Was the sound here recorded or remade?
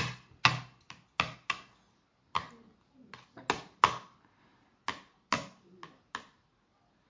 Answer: recorded